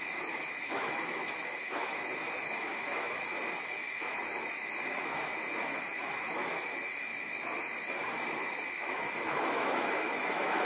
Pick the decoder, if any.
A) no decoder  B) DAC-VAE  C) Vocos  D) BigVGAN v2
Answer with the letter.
B